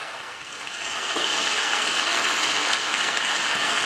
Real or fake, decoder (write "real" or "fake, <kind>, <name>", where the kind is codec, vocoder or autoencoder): fake, codec, SNAC